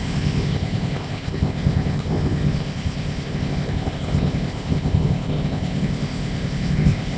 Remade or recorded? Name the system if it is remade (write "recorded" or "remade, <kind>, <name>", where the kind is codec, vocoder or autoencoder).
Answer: remade, codec, ZipCodec